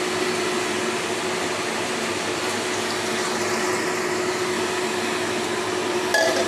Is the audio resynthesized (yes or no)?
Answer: no